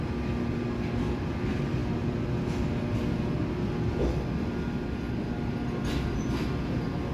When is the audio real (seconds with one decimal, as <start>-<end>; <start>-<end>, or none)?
0.0-7.1